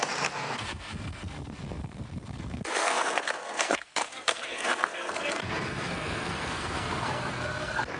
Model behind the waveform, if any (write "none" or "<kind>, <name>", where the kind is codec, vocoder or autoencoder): codec, SNAC